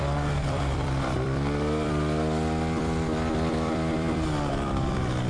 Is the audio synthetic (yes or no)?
yes